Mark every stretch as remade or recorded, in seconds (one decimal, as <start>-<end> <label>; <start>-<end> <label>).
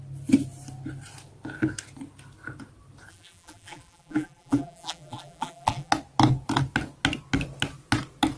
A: 0.0-3.1 recorded; 3.1-5.9 remade; 5.9-8.4 recorded